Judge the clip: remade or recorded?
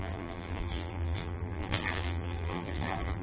remade